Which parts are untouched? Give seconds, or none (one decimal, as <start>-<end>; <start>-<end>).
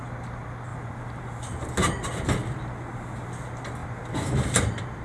0.0-0.7; 1.5-5.0